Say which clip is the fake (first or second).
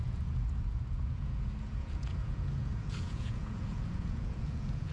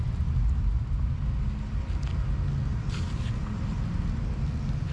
first